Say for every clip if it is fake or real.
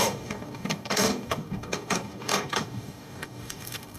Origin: fake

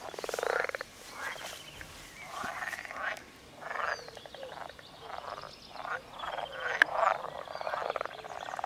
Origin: real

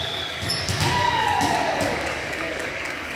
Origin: fake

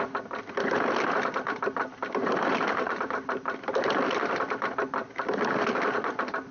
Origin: real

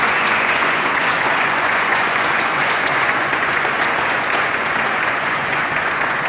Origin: fake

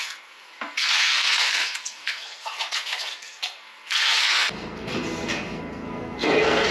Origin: fake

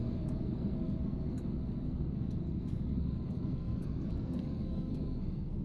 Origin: fake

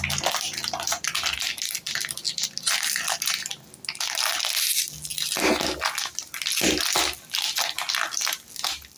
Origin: real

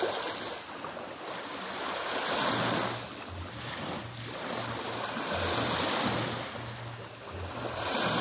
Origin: real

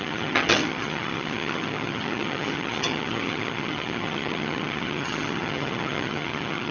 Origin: fake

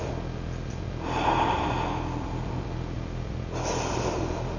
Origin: real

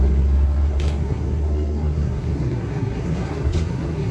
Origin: fake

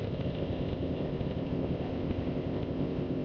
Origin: fake